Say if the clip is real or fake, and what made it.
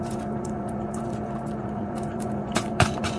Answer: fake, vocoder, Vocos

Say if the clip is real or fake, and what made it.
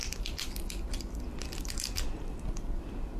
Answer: real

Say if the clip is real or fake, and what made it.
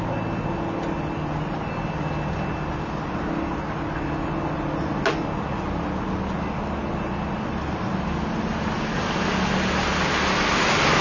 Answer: real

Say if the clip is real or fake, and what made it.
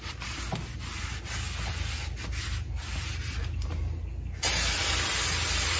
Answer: real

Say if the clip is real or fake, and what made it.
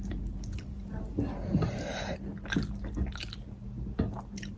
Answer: real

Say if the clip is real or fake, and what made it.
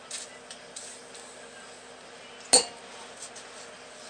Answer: real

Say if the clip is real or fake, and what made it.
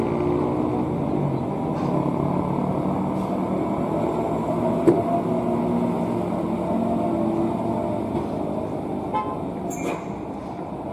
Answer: real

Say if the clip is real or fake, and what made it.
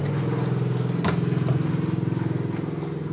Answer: real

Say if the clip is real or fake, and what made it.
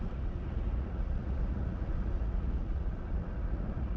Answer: fake, vocoder, Vocos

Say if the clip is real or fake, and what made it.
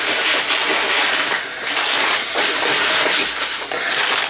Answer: real